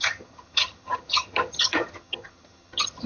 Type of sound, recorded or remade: remade